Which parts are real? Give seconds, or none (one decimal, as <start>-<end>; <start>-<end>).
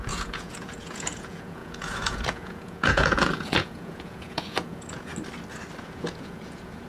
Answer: 5.1-5.8